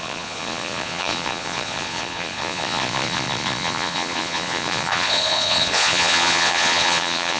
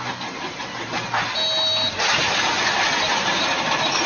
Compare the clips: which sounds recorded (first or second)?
second